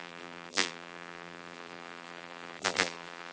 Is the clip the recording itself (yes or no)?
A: no